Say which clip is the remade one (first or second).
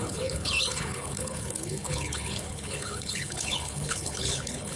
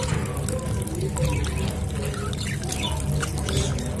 first